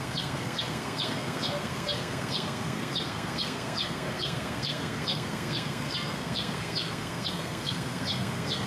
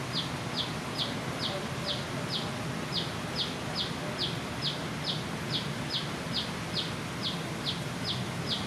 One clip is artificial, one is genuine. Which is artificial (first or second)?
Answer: first